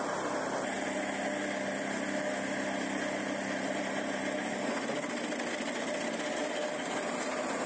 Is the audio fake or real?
real